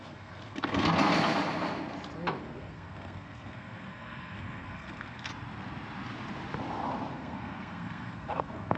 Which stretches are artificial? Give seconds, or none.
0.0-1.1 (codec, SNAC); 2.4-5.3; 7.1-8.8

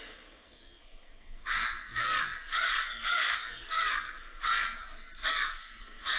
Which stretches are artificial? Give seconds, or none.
0.0-6.2 (codec, SNAC)